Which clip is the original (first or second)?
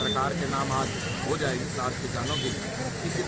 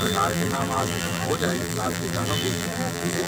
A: first